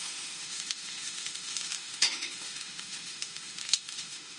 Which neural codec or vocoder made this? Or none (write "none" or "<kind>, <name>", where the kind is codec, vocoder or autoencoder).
autoencoder, DAC-VAE